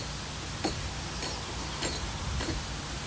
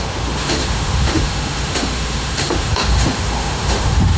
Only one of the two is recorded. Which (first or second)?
first